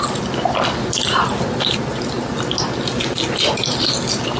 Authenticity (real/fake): real